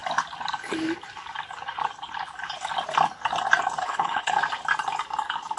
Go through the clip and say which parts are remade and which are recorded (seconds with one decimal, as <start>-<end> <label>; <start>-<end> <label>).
0.0-3.8 recorded; 3.8-4.4 remade; 4.4-5.6 recorded